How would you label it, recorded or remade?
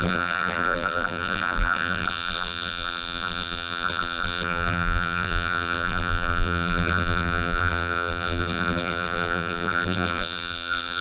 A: remade